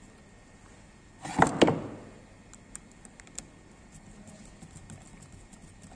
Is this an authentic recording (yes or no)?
yes